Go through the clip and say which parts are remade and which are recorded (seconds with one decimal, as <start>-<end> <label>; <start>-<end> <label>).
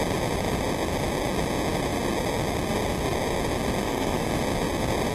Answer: 0.0-3.8 recorded; 3.8-4.3 remade; 4.3-5.1 recorded